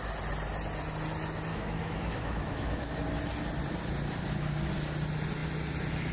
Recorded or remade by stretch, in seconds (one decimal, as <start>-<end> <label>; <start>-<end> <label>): 0.0-1.5 recorded; 1.5-2.9 remade; 2.9-6.1 recorded

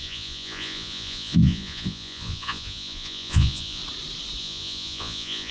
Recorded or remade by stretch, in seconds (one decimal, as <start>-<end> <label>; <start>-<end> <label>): 0.0-3.8 remade; 3.8-4.4 recorded; 4.4-5.5 remade